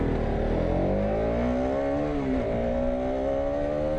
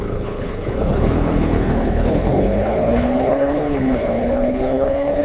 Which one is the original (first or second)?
first